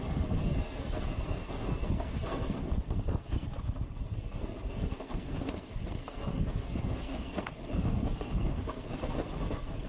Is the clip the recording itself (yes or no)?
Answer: no